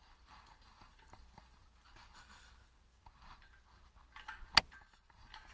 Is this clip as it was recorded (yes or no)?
yes